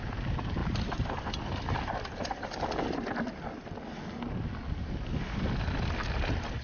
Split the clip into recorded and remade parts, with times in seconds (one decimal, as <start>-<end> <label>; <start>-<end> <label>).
0.0-6.6 recorded